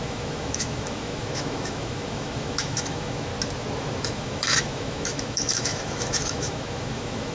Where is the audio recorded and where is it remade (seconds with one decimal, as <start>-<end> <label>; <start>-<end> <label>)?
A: 0.0-3.3 remade; 3.3-3.8 recorded; 3.8-7.3 remade